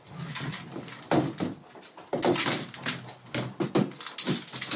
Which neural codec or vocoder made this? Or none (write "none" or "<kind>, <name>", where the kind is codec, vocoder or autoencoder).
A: none